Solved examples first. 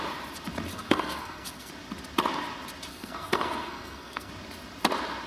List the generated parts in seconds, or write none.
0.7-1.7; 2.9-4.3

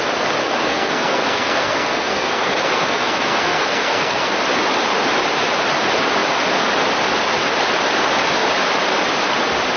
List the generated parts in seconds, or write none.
0.4-4.3

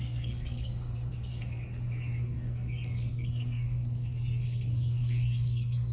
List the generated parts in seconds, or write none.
0.0-5.9

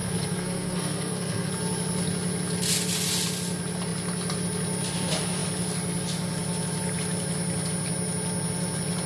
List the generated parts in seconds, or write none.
0.0-1.5

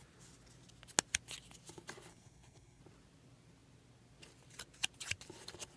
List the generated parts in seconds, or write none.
2.1-2.8

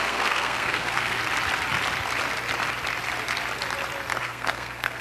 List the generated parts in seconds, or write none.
0.0-1.2; 4.2-5.0

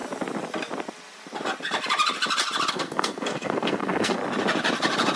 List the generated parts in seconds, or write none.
2.7-4.2